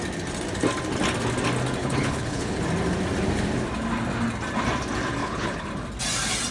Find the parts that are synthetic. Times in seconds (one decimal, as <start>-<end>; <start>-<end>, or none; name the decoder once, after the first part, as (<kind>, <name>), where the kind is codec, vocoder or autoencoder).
1.8-2.6 (codec, HILCodec); 5.2-5.7